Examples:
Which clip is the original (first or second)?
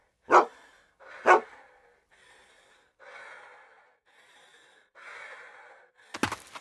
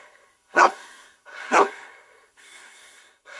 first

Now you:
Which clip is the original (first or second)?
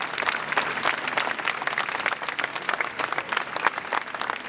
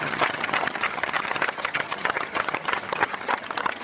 first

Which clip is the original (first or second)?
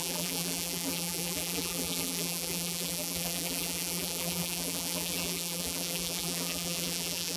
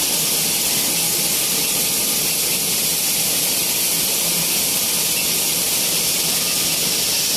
second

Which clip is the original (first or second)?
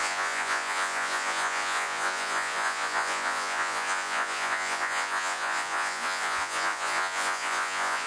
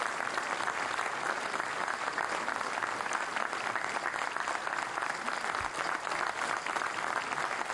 second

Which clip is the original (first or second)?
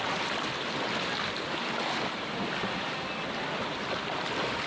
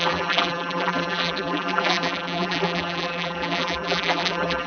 first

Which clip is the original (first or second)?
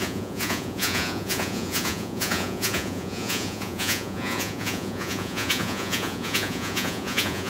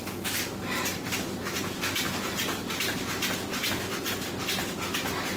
second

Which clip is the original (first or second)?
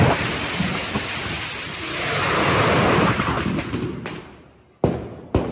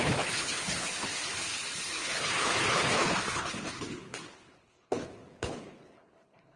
first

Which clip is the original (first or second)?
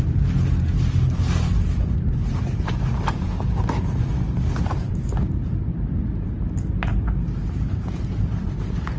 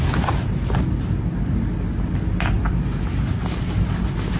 second